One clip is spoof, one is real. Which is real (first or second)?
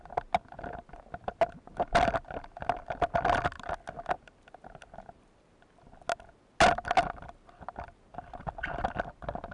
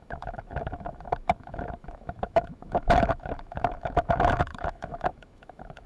first